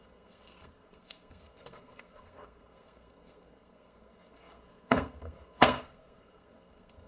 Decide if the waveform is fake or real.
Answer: fake